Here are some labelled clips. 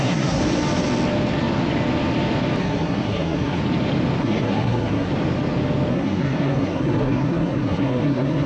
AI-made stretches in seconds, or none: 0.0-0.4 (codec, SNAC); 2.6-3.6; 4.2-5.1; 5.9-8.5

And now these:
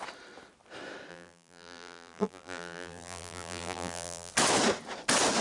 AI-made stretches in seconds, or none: 1.1-4.3 (vocoder, BigVGAN v2)

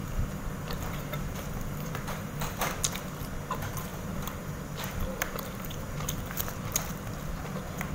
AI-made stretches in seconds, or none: 0.0-2.6 (vocoder, BigVGAN v2); 3.9-6.2

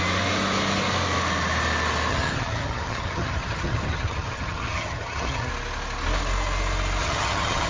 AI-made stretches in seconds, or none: 2.1-5.5 (vocoder, HiFi-GAN); 7.0-7.7

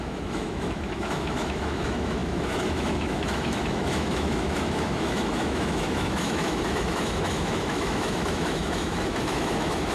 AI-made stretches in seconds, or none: 0.0-9.9 (autoencoder, DAC-VAE)

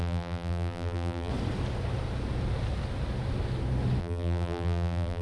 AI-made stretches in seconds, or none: 0.0-1.3 (vocoder, BigVGAN v2); 4.0-5.2

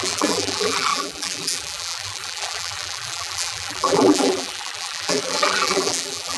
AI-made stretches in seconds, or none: 0.0-6.4 (vocoder, BigVGAN v2)

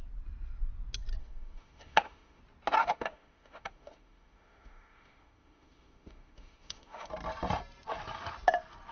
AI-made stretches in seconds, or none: 1.2-2.4 (autoencoder, DAC-VAE); 2.8-7.1